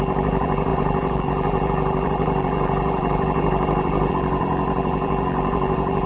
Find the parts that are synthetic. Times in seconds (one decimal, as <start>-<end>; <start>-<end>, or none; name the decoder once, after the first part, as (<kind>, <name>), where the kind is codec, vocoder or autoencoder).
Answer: 0.0-6.1 (vocoder, BigVGAN v2)